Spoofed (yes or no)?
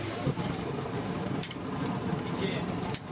yes